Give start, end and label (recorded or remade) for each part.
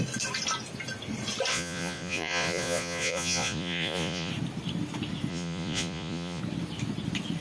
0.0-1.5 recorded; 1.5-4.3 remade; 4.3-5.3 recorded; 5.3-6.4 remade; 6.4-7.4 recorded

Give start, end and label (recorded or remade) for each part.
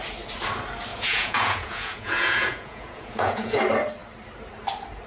0.0-0.9 recorded; 0.9-3.6 remade; 3.6-5.1 recorded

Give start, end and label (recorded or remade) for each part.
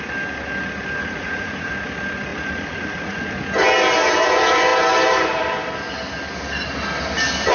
0.0-1.0 recorded; 1.0-1.7 remade; 1.7-2.3 recorded; 2.3-3.2 remade; 3.2-7.5 recorded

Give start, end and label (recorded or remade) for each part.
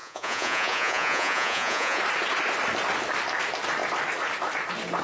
0.0-2.0 remade; 2.0-5.0 recorded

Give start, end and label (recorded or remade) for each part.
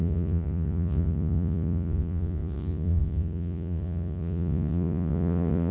0.0-5.7 remade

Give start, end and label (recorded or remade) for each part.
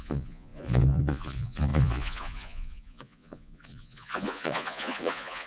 0.0-5.5 remade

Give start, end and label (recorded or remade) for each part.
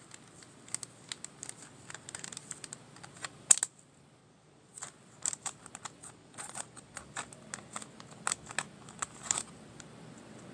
0.0-4.2 recorded; 4.2-4.8 remade; 4.8-6.0 recorded; 6.0-7.0 remade; 7.0-10.5 recorded